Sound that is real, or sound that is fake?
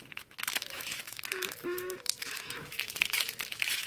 fake